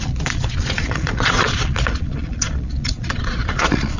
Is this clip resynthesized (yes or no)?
yes